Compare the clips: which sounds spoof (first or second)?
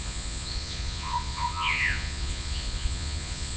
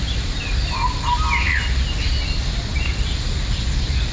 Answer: first